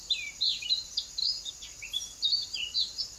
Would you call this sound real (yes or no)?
no